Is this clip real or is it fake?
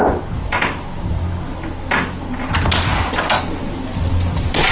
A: real